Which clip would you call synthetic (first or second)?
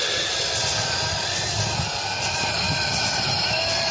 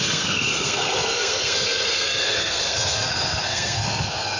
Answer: second